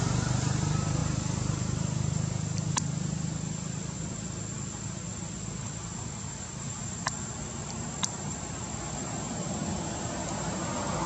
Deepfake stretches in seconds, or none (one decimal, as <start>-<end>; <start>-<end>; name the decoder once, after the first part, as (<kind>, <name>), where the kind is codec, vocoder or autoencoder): none